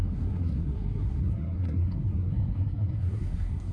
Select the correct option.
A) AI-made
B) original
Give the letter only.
A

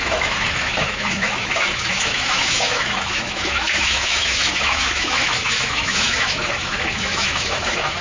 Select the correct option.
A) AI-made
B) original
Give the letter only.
A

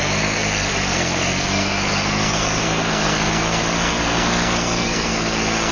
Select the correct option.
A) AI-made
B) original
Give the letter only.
A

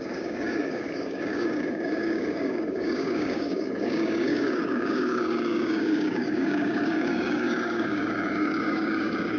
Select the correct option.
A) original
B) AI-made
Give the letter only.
B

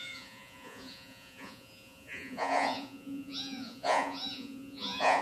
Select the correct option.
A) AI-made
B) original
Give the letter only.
A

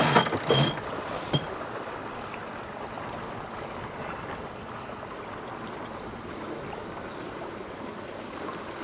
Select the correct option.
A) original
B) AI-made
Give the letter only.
A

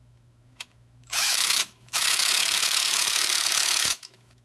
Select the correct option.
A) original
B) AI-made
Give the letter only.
B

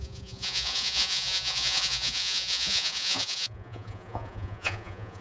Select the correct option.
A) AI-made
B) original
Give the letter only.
A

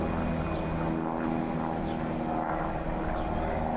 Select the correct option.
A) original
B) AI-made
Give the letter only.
A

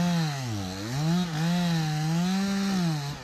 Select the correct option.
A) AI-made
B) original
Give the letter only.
B